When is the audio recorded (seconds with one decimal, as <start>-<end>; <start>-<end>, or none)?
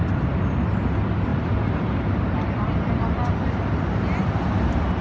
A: 0.0-1.3; 4.3-5.0